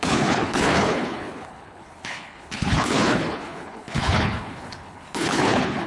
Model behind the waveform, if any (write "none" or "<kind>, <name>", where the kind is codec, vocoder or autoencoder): codec, HILCodec